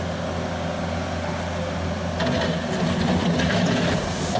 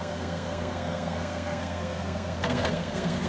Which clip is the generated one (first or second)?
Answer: second